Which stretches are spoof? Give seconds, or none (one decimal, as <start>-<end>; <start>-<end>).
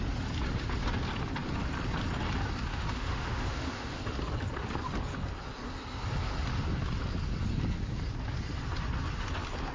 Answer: 2.7-4.0